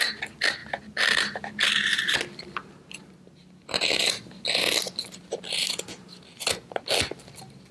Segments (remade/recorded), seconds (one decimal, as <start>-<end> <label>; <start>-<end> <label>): 0.0-7.7 recorded